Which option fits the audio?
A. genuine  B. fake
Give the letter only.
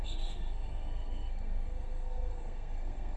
B